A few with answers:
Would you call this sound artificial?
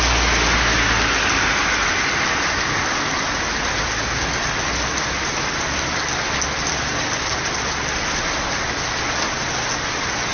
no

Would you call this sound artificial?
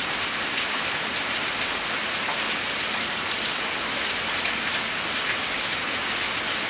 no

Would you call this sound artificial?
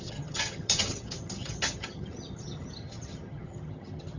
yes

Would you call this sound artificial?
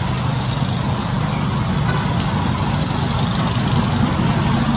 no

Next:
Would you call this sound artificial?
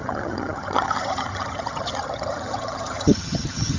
yes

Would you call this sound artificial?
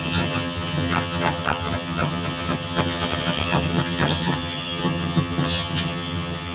yes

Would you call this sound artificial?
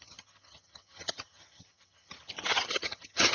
yes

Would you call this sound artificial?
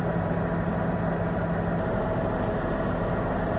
no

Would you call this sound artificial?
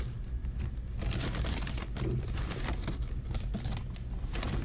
no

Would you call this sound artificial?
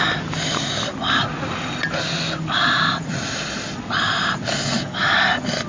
no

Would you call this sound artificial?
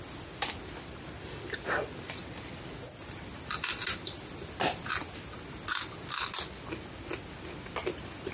no